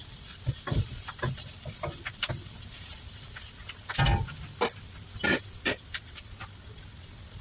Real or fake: real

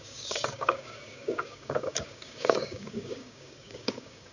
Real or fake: fake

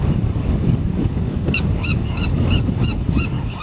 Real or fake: fake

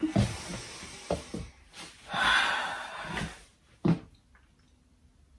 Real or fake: real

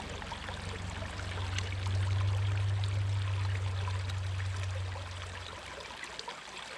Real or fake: real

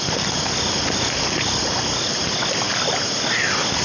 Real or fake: real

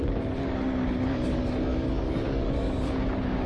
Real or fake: fake